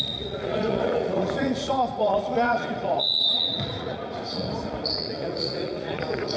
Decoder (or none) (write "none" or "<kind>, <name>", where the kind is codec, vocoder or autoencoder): vocoder, Vocos